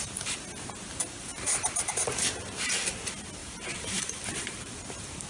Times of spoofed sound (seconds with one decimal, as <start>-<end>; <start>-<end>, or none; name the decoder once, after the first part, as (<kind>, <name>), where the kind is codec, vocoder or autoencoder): 1.3-2.7 (vocoder, BigVGAN v2); 3.4-5.3